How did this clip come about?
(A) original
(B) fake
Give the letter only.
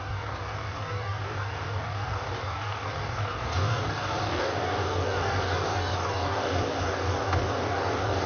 B